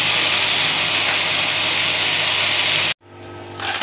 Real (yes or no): yes